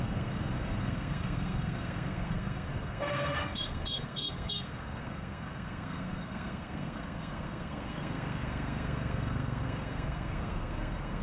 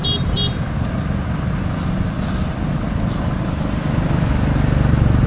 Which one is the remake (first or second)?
first